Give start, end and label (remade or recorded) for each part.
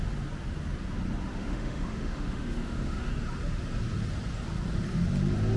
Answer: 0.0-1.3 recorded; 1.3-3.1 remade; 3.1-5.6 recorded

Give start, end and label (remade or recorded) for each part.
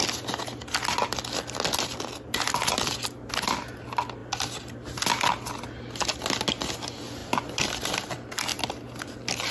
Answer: 0.0-9.5 recorded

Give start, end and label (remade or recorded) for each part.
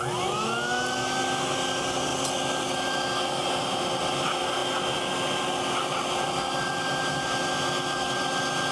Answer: 0.0-8.7 recorded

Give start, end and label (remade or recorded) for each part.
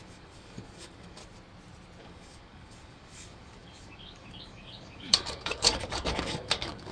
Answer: 0.0-1.2 remade; 1.2-2.0 recorded; 2.0-6.9 remade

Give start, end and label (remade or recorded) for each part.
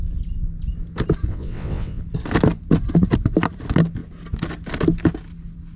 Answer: 0.0-1.3 recorded; 1.3-2.0 remade; 2.0-5.8 recorded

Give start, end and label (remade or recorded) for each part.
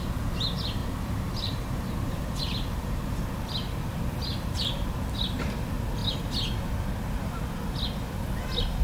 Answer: 0.0-0.8 recorded; 0.8-3.2 remade; 3.2-4.3 recorded; 4.3-5.2 remade; 5.2-8.8 recorded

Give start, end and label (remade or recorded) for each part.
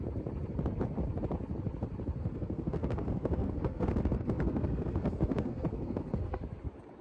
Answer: 0.0-2.2 recorded; 2.2-6.4 remade; 6.4-7.0 recorded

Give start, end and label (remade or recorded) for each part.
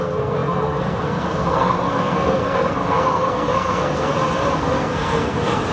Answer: 0.0-4.1 remade; 4.1-4.6 recorded; 4.6-5.7 remade